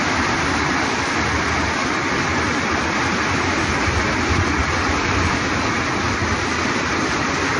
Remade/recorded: remade